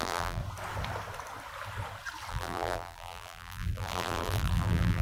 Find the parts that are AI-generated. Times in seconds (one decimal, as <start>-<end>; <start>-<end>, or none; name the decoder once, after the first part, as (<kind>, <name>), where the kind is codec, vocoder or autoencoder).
0.0-0.4 (vocoder, BigVGAN v2); 2.3-5.0